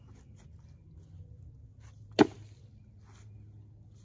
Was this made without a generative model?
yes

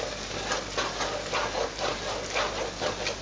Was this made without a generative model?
yes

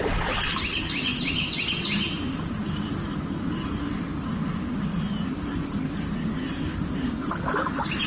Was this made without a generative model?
yes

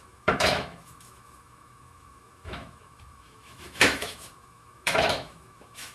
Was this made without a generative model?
no